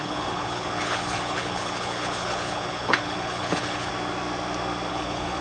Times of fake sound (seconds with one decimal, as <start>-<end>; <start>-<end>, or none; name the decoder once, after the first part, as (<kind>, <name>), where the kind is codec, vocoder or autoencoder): 0.0-3.9 (codec, HILCodec); 4.9-5.4